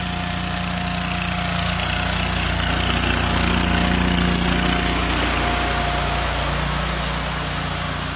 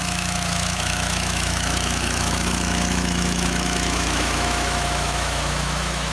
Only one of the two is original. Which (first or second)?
first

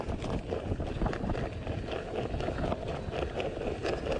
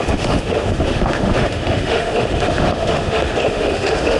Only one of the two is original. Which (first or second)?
first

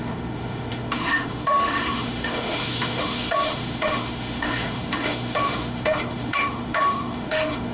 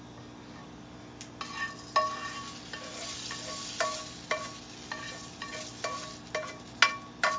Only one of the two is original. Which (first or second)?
second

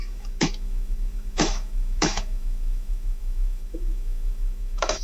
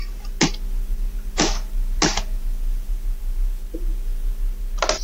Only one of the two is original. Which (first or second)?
second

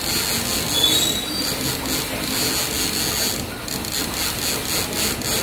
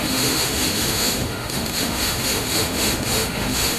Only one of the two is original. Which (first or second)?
first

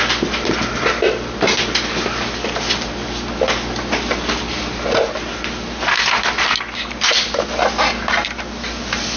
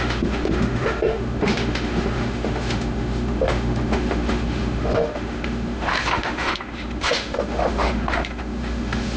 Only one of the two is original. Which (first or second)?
first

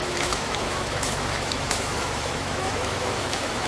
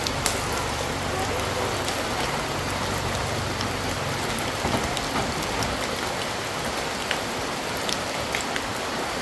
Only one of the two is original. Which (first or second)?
second